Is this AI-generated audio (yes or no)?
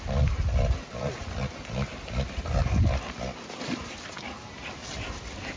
no